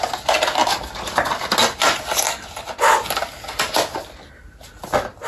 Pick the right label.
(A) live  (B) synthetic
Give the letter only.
A